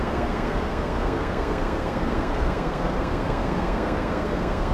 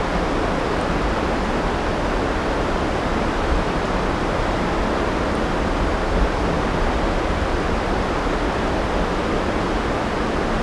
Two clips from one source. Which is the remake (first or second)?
first